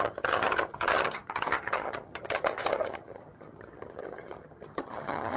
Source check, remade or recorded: remade